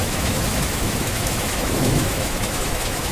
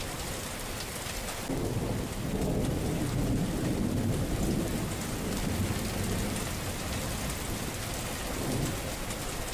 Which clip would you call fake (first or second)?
first